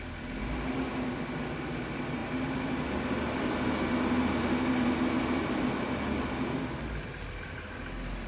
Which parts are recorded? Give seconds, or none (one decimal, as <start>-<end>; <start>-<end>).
0.0-8.3